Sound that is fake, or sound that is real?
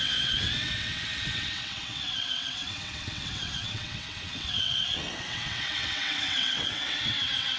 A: fake